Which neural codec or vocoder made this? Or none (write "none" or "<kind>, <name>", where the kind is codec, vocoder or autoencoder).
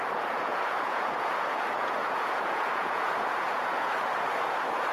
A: vocoder, Vocos